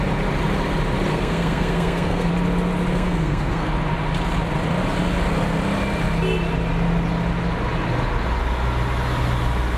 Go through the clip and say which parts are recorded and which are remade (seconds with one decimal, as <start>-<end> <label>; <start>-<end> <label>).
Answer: 0.0-1.1 recorded; 1.1-2.3 remade; 2.3-2.9 recorded; 2.9-3.7 remade; 3.7-9.8 recorded